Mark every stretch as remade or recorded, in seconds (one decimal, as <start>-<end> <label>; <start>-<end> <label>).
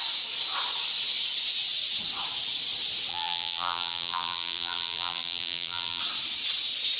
0.0-3.1 recorded; 3.1-6.0 remade; 6.0-7.0 recorded